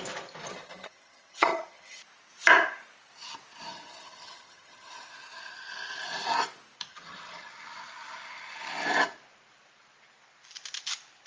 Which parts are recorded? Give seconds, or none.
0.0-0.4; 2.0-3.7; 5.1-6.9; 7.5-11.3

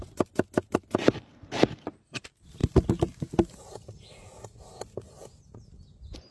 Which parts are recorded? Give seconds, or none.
0.0-6.3

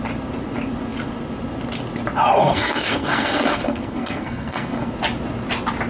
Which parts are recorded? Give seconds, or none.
0.0-2.4; 4.9-5.9

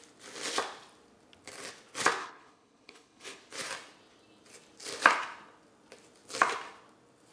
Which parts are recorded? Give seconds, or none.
0.0-2.2; 3.4-7.3

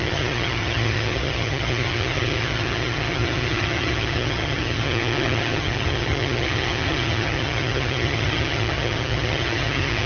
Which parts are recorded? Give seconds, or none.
none

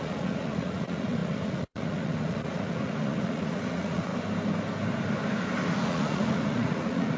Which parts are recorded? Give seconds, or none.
4.1-5.7